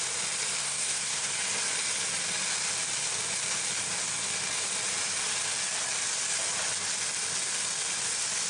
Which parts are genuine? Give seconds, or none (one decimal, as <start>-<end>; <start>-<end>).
0.0-0.6; 1.3-8.5